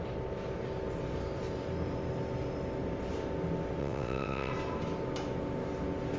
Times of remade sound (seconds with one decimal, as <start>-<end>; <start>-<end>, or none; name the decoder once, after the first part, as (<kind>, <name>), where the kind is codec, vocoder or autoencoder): 3.8-4.5 (vocoder, WaveNeXt)